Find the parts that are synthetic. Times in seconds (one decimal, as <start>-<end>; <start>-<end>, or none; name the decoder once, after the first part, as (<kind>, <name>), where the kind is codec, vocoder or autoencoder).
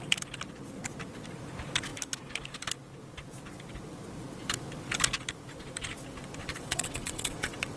6.4-7.8 (vocoder, WaveNeXt)